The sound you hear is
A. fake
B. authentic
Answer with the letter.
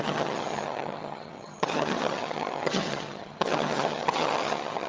A